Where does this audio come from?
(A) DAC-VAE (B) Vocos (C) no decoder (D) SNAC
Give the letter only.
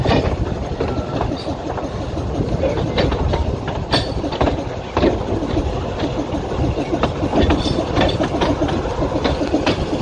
C